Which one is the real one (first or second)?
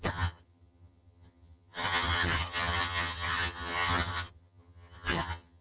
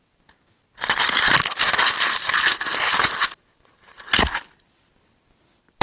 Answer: second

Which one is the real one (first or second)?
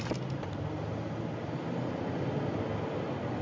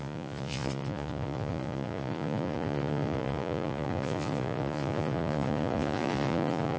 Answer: first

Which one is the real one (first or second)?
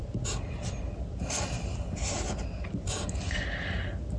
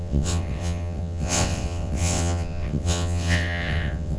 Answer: first